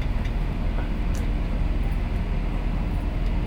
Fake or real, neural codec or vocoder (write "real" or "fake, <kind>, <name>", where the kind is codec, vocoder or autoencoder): real